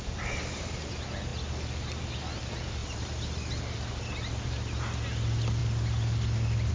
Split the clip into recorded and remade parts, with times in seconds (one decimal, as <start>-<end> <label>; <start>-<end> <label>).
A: 0.0-2.8 recorded; 2.8-3.6 remade; 3.6-6.7 recorded

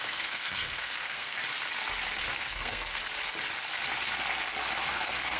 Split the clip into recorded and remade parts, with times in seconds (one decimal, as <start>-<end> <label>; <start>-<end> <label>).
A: 0.0-1.4 remade; 1.4-2.2 recorded; 2.2-3.0 remade; 3.0-4.9 recorded; 4.9-5.4 remade

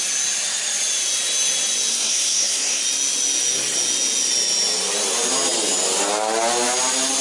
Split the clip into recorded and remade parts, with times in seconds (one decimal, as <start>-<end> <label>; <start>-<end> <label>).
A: 0.0-1.9 recorded; 1.9-2.8 remade; 2.8-7.2 recorded

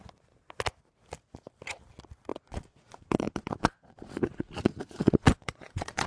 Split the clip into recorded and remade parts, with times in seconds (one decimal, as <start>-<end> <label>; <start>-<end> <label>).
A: 0.0-2.3 recorded; 2.3-6.1 remade